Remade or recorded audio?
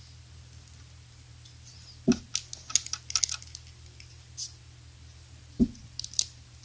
recorded